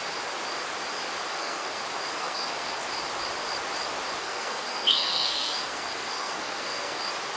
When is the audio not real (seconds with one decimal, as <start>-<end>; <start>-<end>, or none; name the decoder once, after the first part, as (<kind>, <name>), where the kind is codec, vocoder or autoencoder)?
1.3-1.8 (codec, SNAC); 2.2-2.8; 4.2-7.0